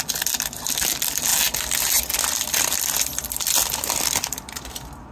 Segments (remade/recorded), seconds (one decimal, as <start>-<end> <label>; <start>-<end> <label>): 0.0-5.1 recorded